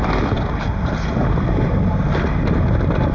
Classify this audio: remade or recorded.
recorded